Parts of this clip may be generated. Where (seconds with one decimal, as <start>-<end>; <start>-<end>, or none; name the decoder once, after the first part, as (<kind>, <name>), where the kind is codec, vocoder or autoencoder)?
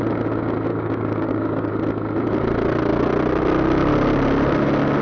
0.7-1.7 (codec, DAC)